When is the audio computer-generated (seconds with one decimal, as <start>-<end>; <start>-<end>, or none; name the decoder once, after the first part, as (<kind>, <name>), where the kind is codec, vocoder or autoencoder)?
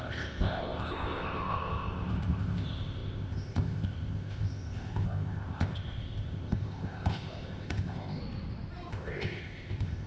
0.0-8.2 (codec, ZipCodec); 8.9-10.1